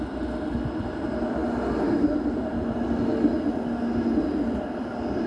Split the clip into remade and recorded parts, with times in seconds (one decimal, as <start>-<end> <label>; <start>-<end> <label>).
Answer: 0.0-5.3 recorded